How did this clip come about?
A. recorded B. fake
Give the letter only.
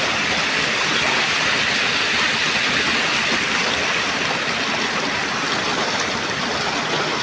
A